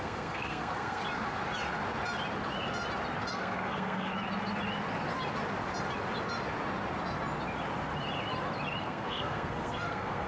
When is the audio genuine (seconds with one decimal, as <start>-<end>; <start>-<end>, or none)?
1.0-3.3; 4.1-8.8